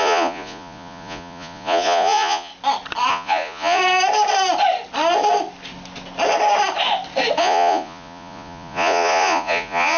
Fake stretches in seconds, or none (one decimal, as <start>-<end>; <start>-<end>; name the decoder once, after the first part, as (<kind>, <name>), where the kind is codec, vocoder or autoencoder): 0.0-2.5 (vocoder, Vocos); 3.1-3.8; 7.4-10.0